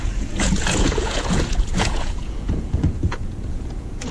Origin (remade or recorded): remade